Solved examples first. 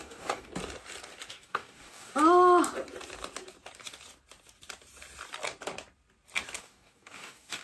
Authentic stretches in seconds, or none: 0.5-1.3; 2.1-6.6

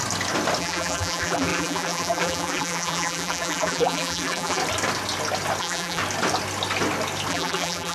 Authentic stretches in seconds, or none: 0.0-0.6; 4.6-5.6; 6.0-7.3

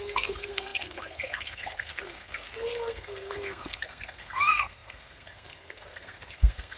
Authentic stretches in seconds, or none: none

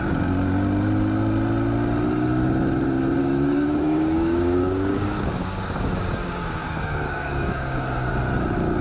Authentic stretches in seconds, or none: 0.0-3.2; 8.1-8.8

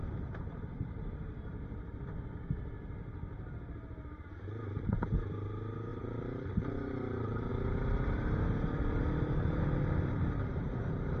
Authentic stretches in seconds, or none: 2.0-5.9; 7.5-11.2

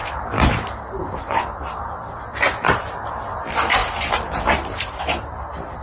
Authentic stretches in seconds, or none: 2.8-3.8; 5.0-5.8

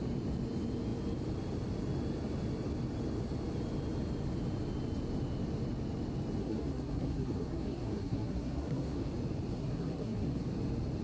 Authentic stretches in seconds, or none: 0.0-6.4; 9.1-9.5; 10.4-11.0